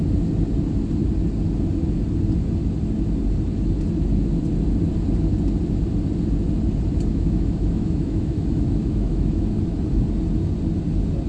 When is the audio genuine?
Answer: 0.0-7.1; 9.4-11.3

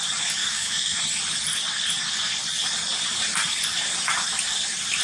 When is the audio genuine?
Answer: 0.0-0.4; 1.0-5.0

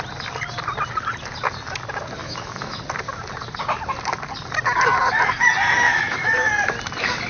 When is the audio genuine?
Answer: 0.0-2.2; 2.8-5.9; 6.5-7.3

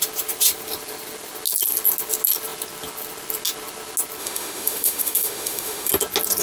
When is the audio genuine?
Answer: 0.0-4.2; 5.9-6.4

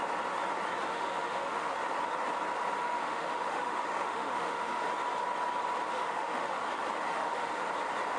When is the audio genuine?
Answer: 0.0-0.9; 1.7-2.8; 4.8-5.9; 6.6-7.1; 7.6-8.2